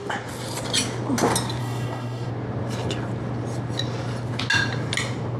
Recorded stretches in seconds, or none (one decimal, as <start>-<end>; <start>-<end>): 0.0-1.6; 2.3-5.4